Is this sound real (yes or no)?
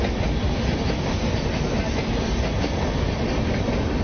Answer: yes